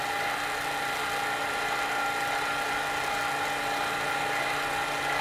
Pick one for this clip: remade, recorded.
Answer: recorded